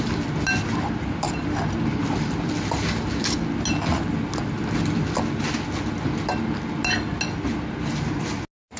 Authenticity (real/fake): real